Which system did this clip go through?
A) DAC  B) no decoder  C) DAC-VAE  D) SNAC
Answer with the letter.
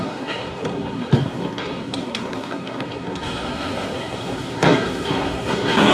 D